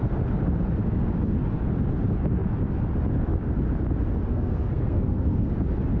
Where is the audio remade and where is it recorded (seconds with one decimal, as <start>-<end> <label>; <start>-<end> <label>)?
0.0-4.3 recorded; 4.3-5.5 remade; 5.5-6.0 recorded